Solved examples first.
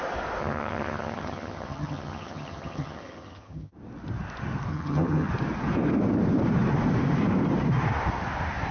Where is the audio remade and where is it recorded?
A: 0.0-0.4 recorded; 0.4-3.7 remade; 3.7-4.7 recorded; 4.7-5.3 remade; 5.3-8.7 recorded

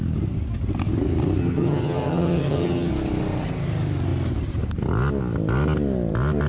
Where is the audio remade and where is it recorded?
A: 0.0-1.4 recorded; 1.4-2.9 remade; 2.9-6.5 recorded